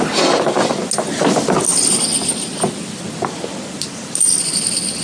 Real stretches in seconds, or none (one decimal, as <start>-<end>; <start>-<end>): 0.0-5.0